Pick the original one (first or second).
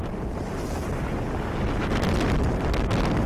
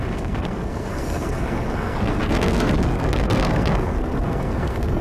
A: first